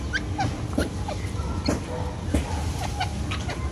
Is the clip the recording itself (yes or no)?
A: yes